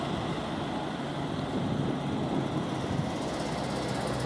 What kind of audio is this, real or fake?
real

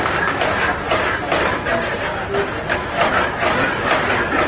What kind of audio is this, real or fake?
real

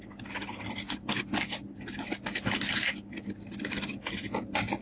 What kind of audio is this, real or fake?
real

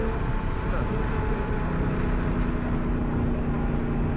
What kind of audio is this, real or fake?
real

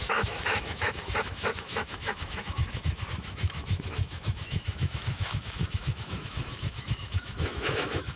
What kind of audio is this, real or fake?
fake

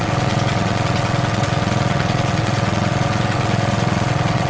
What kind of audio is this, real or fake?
fake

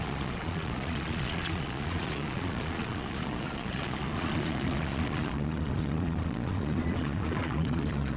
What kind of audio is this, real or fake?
fake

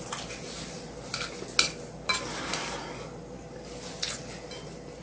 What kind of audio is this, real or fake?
real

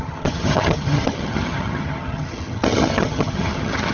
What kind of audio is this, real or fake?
fake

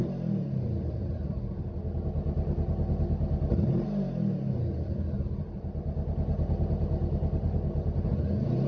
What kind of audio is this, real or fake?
real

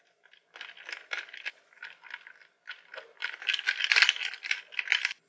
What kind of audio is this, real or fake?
real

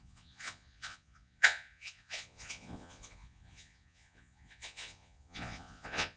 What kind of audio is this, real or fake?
fake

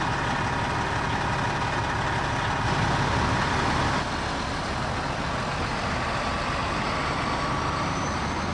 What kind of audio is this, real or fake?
real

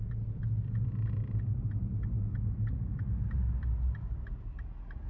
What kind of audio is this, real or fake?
real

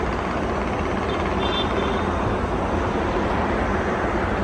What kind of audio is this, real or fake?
real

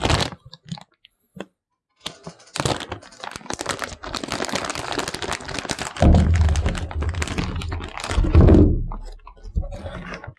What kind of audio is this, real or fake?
real